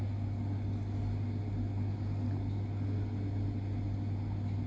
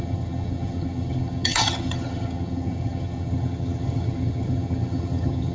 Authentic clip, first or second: first